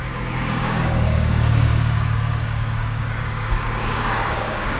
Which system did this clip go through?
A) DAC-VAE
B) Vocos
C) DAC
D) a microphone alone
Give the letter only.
C